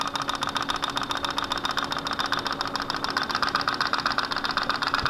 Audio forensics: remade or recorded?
recorded